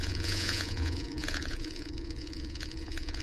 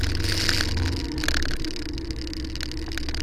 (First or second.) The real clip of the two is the second